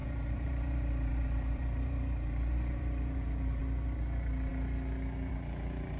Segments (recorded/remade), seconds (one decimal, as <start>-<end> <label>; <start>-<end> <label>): 0.0-3.6 remade; 3.6-6.0 recorded